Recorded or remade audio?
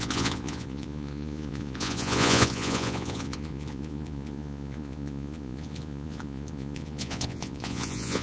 remade